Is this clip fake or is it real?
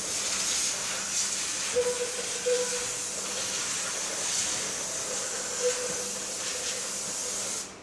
real